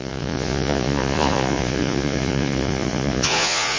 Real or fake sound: fake